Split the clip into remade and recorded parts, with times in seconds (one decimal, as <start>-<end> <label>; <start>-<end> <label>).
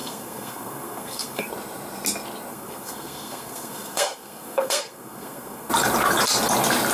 0.0-1.5 remade; 1.5-2.5 recorded; 2.5-5.7 remade; 5.7-6.9 recorded